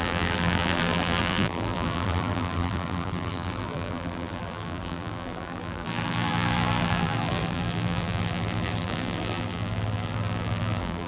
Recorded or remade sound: remade